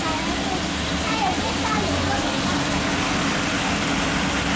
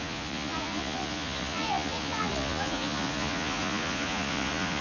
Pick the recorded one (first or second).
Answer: first